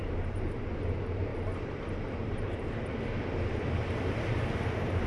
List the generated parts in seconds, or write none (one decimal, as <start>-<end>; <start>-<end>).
0.0-0.7; 1.3-3.6